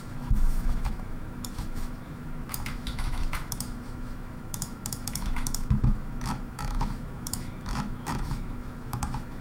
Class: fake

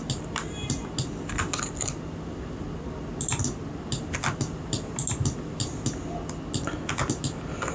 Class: real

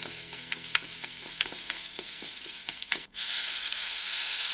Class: fake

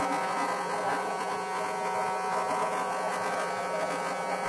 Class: fake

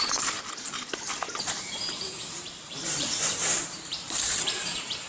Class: fake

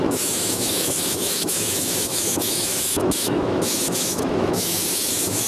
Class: fake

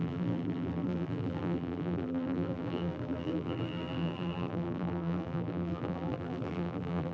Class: fake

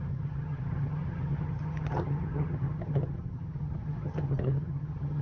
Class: fake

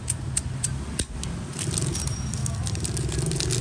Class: real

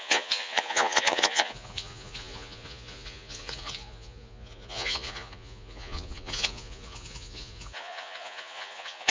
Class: fake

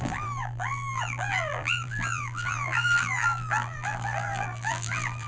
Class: fake